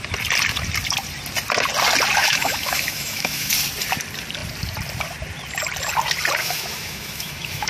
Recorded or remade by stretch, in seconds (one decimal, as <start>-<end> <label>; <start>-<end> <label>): 0.0-2.2 recorded; 2.2-3.5 remade; 3.5-6.4 recorded; 6.4-7.7 remade